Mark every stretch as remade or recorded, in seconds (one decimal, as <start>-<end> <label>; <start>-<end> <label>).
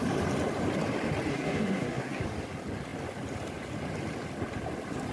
0.0-1.3 recorded; 1.3-2.2 remade; 2.2-5.1 recorded